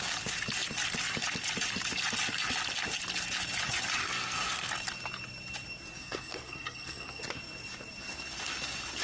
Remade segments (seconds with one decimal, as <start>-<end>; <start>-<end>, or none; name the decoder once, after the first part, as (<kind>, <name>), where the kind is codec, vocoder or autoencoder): 4.0-4.7 (codec, SNAC); 5.9-7.2